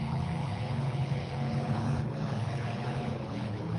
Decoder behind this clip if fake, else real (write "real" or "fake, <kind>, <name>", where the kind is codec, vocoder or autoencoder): fake, codec, HILCodec